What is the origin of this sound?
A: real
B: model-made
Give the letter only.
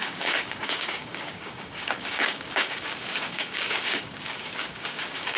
B